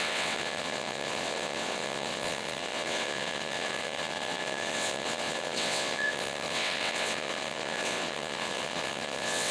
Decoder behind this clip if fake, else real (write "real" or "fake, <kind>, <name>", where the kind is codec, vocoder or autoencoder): fake, vocoder, WaveNeXt